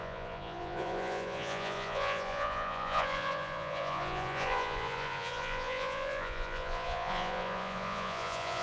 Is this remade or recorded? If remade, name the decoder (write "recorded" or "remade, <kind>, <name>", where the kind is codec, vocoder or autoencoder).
remade, vocoder, Vocos